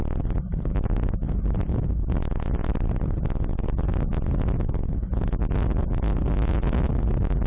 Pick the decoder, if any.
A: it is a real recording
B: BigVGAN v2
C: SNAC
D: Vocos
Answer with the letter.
A